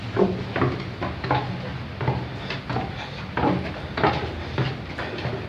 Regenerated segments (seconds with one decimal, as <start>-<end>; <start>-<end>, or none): none